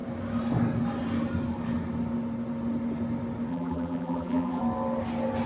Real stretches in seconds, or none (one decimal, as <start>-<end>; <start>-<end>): 0.0-3.5; 4.6-5.5